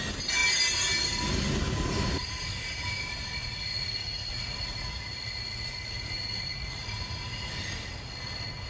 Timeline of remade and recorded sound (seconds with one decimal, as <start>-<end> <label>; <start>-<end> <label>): 0.0-3.4 recorded; 3.4-7.5 remade; 7.5-8.7 recorded